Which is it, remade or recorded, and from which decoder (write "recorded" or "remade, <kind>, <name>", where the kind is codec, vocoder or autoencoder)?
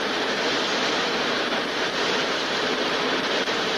remade, vocoder, BigVGAN v2